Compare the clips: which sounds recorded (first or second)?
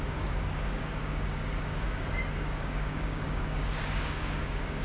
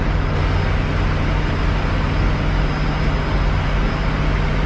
second